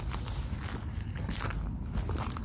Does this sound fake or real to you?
real